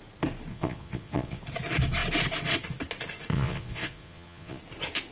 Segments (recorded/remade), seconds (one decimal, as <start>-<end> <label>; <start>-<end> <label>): 0.0-0.5 recorded; 0.5-1.4 remade; 1.4-3.3 recorded; 3.3-4.6 remade; 4.6-5.1 recorded